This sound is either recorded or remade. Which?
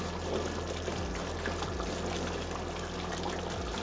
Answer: recorded